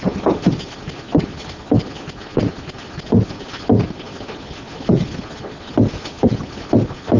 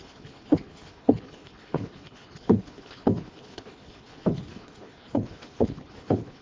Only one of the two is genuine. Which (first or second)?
first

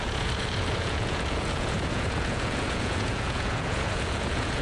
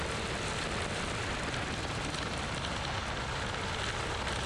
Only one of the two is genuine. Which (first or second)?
second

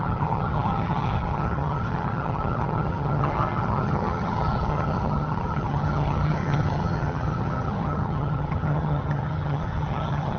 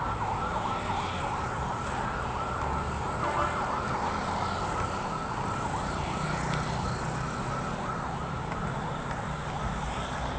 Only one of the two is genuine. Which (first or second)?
second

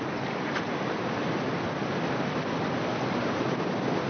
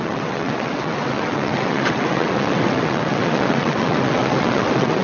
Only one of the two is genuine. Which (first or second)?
first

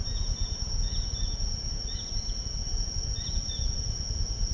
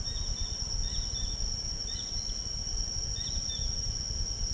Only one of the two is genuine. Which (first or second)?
second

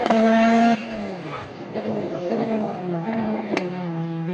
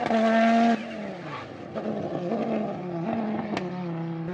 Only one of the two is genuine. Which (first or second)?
second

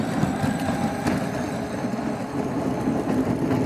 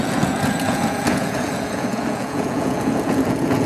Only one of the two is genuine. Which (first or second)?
first